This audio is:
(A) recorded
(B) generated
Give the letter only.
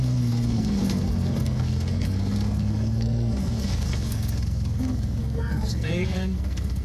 B